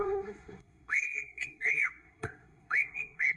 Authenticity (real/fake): fake